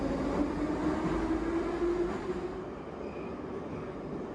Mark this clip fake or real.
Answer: real